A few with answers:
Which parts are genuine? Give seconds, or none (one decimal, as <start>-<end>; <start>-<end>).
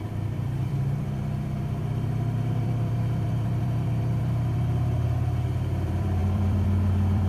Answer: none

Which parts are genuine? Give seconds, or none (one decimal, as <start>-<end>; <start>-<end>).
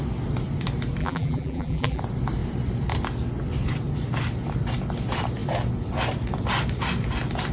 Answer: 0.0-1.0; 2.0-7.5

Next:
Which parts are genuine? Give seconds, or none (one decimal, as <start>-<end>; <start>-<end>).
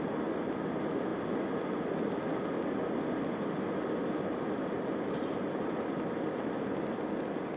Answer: 0.0-4.0; 7.0-7.6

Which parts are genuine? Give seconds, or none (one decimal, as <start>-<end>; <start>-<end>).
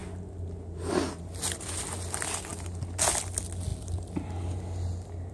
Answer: 0.0-5.3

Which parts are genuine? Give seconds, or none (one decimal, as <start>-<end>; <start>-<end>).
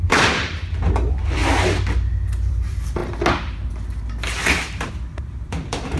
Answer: 1.4-2.1; 3.0-4.9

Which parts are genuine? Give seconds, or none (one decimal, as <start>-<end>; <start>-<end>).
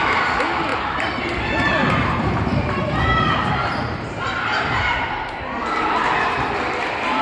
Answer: 0.0-0.7; 2.8-3.6; 4.8-7.2